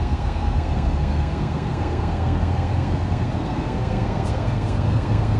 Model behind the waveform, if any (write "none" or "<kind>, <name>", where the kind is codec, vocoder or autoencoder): codec, SNAC